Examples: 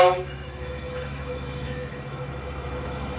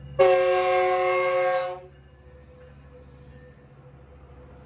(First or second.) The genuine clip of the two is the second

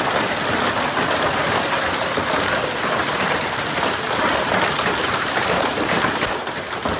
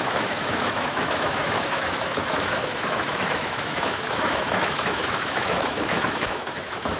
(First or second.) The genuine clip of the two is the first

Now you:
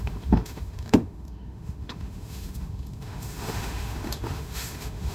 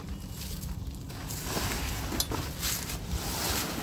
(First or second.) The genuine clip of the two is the second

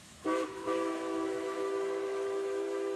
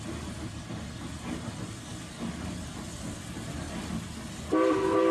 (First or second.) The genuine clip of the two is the second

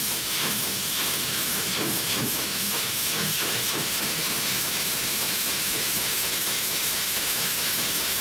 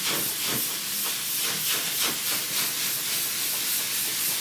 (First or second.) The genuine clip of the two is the second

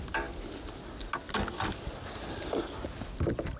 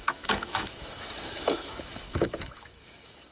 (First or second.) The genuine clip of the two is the first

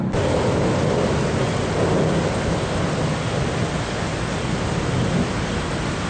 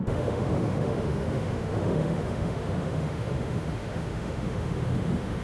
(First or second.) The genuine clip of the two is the first